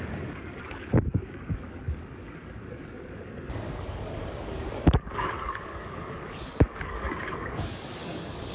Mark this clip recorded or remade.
remade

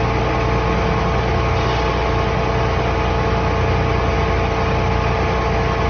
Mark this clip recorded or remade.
recorded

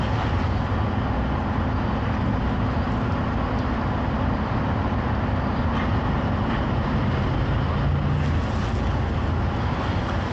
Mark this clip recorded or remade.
recorded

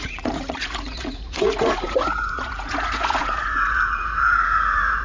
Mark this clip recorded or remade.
remade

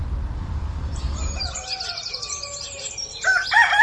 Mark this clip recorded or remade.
remade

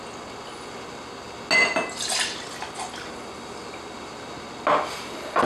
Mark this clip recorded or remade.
recorded